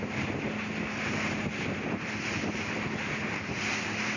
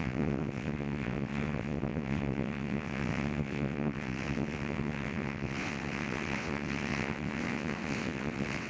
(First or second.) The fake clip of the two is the second